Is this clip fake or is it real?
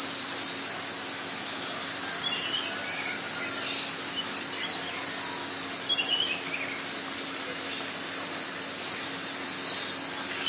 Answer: real